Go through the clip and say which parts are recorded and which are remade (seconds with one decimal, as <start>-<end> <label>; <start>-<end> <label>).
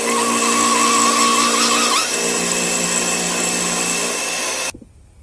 0.0-5.2 recorded